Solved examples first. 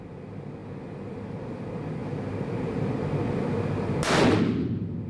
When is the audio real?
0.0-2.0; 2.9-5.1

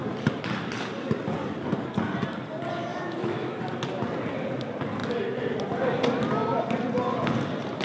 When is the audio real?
0.0-2.9; 3.6-7.8

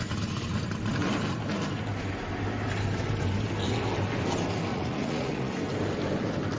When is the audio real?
0.0-4.7; 5.5-6.6

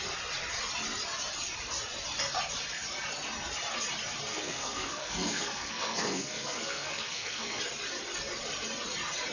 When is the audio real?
0.0-4.3; 7.6-9.3

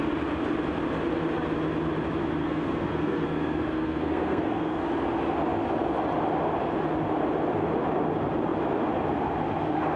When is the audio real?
0.0-2.4; 4.9-10.0